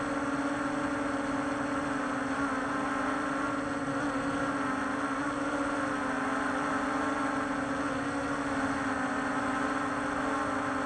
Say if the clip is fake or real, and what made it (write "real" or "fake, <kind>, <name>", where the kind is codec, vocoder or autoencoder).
real